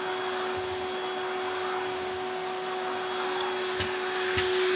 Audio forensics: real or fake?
real